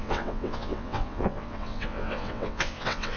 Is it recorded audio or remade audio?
remade